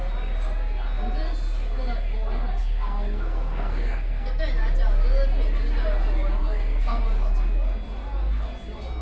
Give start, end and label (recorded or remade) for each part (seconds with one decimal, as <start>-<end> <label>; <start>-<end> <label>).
0.0-2.6 recorded; 2.6-4.4 remade; 4.4-6.4 recorded; 6.4-7.0 remade; 7.0-9.0 recorded